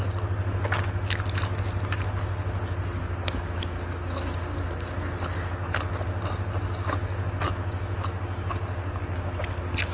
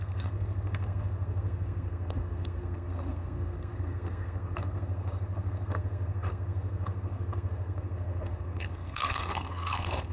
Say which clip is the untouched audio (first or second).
first